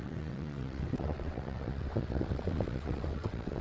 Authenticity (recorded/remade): remade